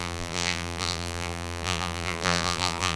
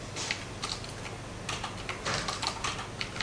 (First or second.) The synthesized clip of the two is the first